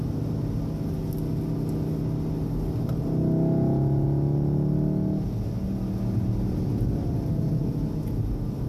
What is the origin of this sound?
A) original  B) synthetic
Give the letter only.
A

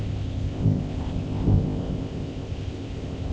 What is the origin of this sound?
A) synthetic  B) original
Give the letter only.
A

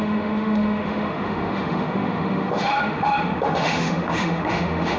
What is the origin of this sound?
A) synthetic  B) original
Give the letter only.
A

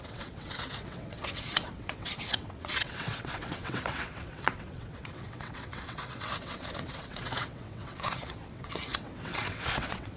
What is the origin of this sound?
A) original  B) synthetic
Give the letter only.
B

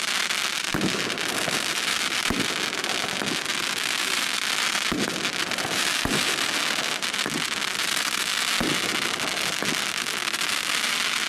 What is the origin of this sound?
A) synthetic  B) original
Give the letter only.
B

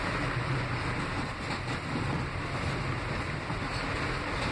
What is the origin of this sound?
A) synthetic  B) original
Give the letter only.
B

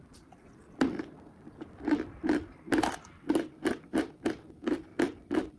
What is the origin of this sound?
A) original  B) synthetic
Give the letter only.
A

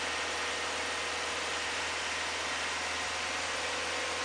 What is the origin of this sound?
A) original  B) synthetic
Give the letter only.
A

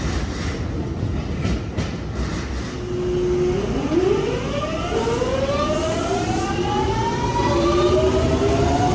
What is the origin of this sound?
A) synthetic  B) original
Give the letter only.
B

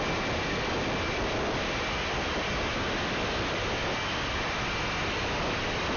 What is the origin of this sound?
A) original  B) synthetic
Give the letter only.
A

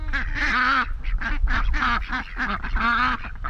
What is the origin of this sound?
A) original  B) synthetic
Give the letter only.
A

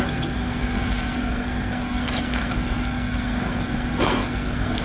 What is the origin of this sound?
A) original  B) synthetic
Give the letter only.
B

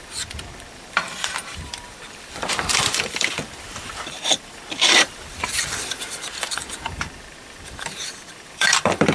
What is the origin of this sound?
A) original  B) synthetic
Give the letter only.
B